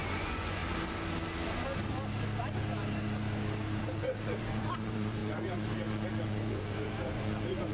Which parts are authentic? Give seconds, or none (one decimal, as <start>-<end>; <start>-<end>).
0.6-3.8